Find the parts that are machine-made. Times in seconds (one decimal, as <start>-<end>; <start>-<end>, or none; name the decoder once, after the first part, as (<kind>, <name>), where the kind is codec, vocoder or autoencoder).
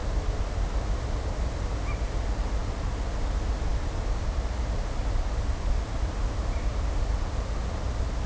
none